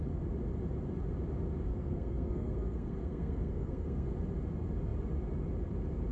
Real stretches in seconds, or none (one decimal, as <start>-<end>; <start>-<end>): 0.0-1.7; 4.1-6.1